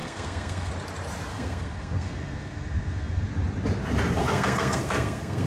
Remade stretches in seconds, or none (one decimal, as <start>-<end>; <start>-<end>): 0.0-0.7; 1.3-3.3; 4.2-5.5